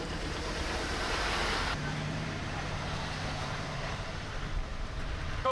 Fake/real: fake